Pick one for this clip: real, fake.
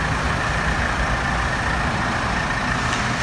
real